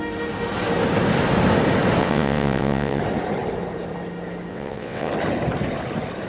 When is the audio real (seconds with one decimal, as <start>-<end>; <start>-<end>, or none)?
0.0-2.0; 3.0-4.5; 5.1-6.3